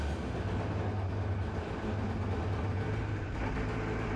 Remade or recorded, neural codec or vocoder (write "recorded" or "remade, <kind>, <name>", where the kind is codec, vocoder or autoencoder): recorded